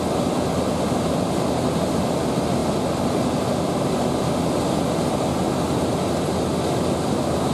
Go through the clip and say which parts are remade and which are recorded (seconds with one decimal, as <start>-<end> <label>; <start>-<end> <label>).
0.0-7.5 recorded